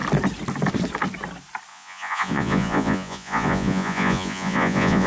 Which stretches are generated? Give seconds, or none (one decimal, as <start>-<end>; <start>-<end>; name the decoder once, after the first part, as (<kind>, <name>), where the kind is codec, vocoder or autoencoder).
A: 1.7-5.1 (vocoder, Vocos)